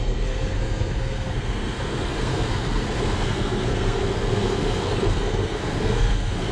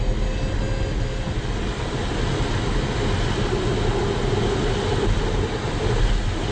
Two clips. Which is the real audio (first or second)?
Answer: second